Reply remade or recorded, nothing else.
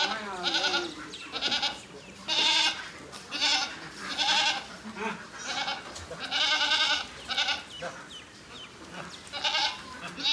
recorded